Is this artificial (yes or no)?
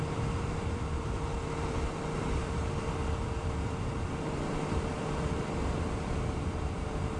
yes